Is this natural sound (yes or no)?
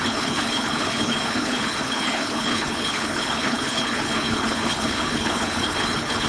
no